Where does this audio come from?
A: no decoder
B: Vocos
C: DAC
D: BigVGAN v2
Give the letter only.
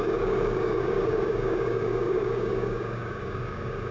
C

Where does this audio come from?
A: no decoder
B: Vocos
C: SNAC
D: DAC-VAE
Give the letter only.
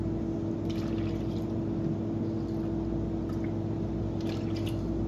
A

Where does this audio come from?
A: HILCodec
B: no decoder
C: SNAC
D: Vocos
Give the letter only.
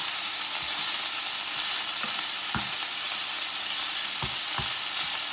B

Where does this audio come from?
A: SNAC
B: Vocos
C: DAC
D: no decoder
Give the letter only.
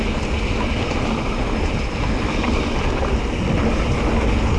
D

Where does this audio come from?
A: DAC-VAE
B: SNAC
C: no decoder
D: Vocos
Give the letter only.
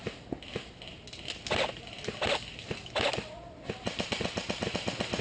C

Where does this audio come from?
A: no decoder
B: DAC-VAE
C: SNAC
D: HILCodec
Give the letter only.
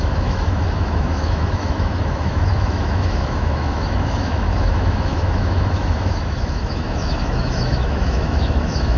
B